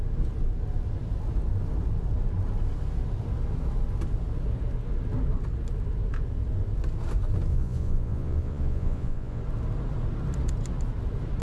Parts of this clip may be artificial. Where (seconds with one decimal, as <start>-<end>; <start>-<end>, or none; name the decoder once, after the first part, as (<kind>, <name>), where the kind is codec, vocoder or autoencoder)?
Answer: 7.5-9.4 (vocoder, Vocos)